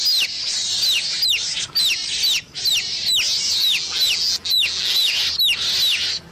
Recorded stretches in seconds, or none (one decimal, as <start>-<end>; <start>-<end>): 0.0-3.6; 5.1-6.3